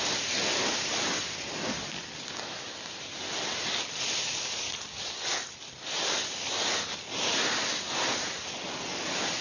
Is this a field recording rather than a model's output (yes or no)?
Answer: yes